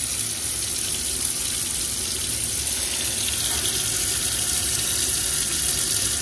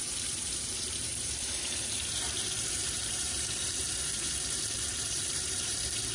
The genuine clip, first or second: first